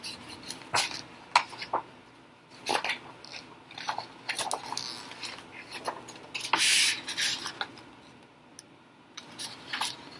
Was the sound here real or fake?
real